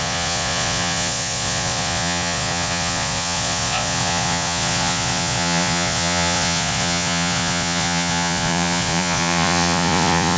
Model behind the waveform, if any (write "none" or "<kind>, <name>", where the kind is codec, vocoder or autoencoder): vocoder, Vocos